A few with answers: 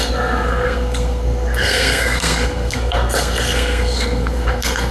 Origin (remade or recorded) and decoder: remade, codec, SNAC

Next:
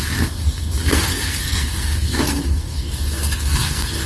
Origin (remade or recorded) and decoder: remade, codec, SNAC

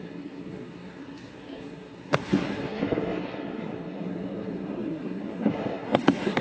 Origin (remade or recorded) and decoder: remade, codec, SNAC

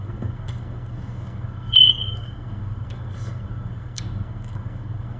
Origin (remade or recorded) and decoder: remade, codec, SNAC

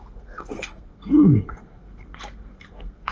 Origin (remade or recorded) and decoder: remade, codec, SNAC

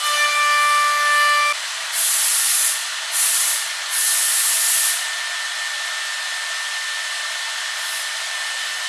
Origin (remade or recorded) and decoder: recorded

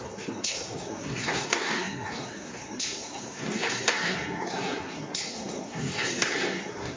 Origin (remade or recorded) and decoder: remade, codec, SNAC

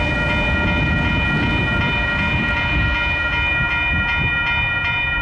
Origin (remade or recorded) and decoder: recorded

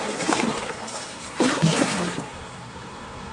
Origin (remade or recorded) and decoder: remade, codec, SNAC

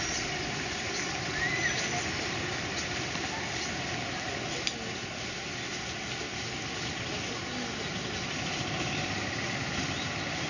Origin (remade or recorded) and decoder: recorded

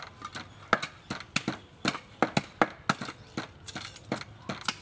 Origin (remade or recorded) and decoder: recorded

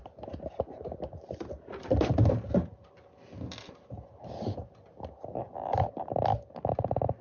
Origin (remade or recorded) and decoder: recorded